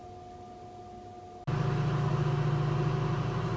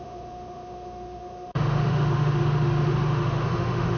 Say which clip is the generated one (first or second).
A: second